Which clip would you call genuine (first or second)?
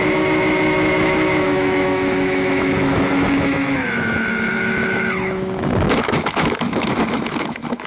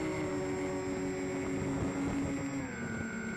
second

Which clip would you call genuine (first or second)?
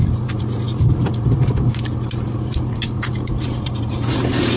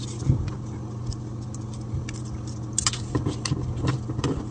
second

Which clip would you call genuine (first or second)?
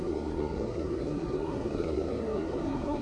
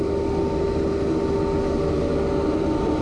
second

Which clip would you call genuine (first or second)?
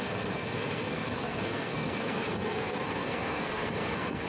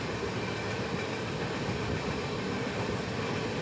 second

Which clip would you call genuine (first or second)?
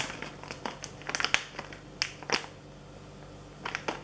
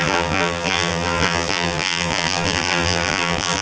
first